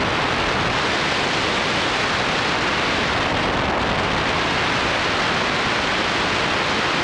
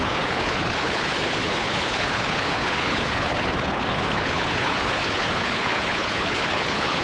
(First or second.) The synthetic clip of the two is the second